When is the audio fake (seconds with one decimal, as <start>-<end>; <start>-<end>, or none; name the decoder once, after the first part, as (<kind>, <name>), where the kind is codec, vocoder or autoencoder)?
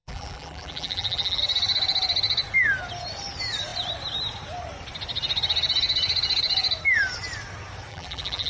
0.0-1.4 (vocoder, BigVGAN v2); 7.9-8.5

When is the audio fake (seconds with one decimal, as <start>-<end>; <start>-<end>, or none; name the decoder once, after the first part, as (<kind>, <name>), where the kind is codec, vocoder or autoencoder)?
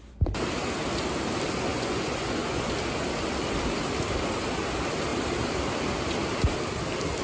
1.7-2.7 (vocoder, Vocos)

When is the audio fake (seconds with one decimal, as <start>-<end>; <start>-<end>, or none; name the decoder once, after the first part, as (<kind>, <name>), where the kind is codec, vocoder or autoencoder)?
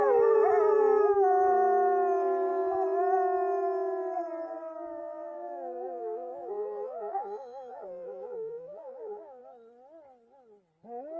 5.0-9.4 (vocoder, BigVGAN v2)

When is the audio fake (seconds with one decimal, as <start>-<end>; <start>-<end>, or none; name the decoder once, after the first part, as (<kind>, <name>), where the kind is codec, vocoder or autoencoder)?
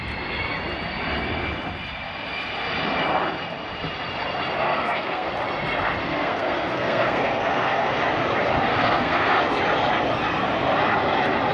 4.6-5.3 (codec, SNAC); 6.0-8.0; 8.7-9.4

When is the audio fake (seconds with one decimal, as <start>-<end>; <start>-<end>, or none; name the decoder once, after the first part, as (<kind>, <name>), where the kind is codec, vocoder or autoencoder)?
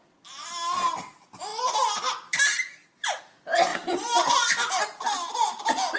none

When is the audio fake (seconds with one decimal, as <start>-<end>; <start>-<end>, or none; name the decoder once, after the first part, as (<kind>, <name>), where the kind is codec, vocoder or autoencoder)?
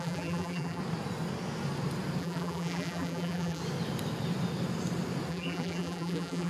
0.0-0.8 (vocoder, BigVGAN v2); 2.2-3.6; 5.3-6.5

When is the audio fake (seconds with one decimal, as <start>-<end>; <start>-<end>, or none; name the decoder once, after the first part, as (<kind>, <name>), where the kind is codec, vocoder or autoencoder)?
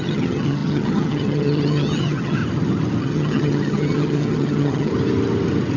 0.0-2.4 (vocoder, HiFi-GAN); 3.0-4.9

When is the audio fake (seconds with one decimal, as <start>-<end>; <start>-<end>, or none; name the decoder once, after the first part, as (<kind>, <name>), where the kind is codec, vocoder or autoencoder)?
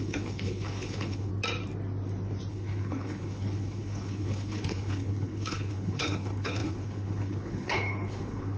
0.0-1.3 (codec, HILCodec); 2.5-8.6